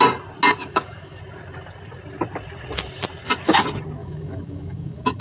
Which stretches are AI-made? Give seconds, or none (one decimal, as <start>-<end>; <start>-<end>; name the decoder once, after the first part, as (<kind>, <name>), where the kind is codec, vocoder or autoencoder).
0.6-1.2 (autoencoder, DAC-VAE); 4.0-5.2

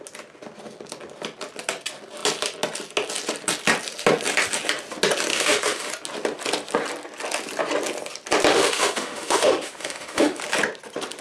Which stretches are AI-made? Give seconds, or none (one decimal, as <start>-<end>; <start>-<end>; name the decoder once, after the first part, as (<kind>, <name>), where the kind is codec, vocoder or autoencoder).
5.3-5.9 (autoencoder, DAC-VAE); 8.5-10.4

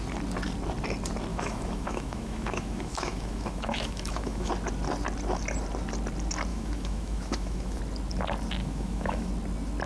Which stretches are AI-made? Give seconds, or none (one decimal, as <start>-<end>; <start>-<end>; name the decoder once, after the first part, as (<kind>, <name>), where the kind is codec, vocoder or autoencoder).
1.3-4.5 (autoencoder, DAC-VAE); 6.5-7.8; 8.6-9.3

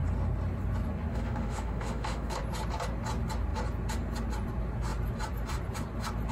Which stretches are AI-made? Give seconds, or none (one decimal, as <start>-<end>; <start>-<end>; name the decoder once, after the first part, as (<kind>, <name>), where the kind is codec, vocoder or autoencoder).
1.1-2.4 (autoencoder, DAC-VAE)

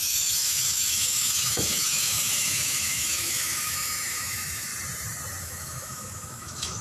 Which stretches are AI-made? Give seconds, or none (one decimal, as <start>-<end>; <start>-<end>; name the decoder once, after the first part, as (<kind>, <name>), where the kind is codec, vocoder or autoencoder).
0.0-4.7 (autoencoder, DAC-VAE); 5.4-6.8